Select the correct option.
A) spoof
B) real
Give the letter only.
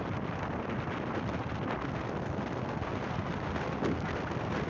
B